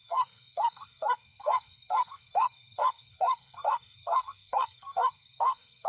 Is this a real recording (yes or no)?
no